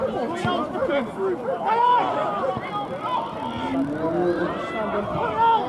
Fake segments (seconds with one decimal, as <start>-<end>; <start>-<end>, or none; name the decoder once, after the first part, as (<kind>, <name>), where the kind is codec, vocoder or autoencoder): none

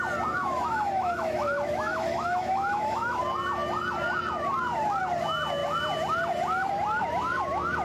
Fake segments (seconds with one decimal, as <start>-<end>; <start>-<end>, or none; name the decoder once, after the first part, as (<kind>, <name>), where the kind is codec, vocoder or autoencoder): 0.4-3.2 (autoencoder, DAC-VAE)